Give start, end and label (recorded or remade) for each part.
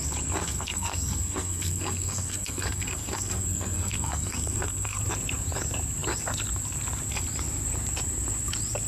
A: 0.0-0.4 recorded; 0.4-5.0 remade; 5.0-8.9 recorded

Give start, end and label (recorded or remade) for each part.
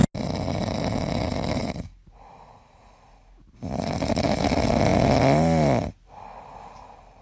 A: 0.0-7.2 recorded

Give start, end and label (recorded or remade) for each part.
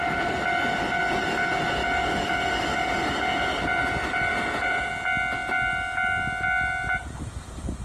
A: 0.0-4.3 recorded; 4.3-4.9 remade; 4.9-7.8 recorded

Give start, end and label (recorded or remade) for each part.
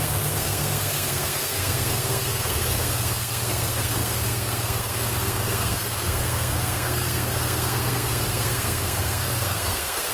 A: 0.0-10.1 remade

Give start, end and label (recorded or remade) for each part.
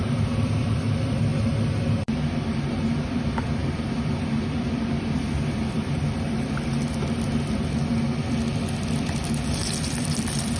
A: 0.0-1.3 remade; 1.3-2.0 recorded; 2.0-10.6 remade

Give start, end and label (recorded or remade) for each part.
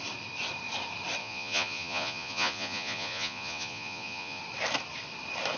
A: 0.0-1.2 recorded; 1.2-4.4 remade; 4.4-5.6 recorded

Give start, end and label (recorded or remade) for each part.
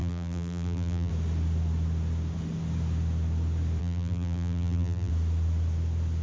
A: 0.0-1.1 remade; 1.1-3.8 recorded; 3.8-5.1 remade; 5.1-6.2 recorded